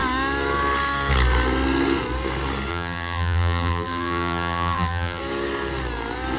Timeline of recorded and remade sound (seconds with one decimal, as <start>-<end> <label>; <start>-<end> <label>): 0.0-2.7 recorded; 2.7-5.2 remade; 5.2-6.4 recorded

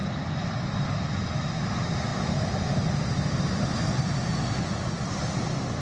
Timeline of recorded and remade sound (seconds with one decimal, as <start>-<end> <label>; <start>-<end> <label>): 0.0-5.8 recorded

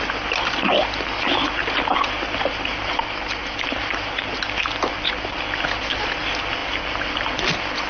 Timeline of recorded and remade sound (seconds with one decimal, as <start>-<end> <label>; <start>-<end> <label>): 0.0-7.9 recorded

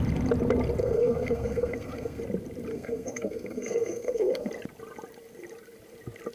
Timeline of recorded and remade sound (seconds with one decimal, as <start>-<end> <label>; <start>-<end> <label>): 0.0-0.8 recorded; 0.8-2.2 remade; 2.2-2.7 recorded; 2.7-4.5 remade; 4.5-6.3 recorded

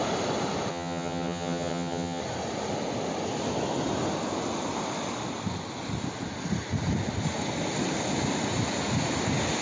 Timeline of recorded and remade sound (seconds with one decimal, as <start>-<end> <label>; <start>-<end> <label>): 0.0-0.7 recorded; 0.7-2.2 remade; 2.2-9.6 recorded

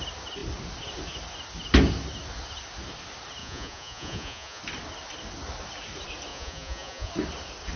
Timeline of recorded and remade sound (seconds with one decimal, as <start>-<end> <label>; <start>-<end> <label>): 0.0-3.4 recorded; 3.4-4.6 remade; 4.6-6.3 recorded; 6.3-7.1 remade; 7.1-7.8 recorded